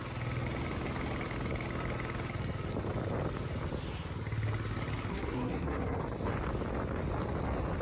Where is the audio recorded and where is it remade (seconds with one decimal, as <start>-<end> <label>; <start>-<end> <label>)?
0.0-5.1 recorded; 5.1-6.0 remade; 6.0-7.8 recorded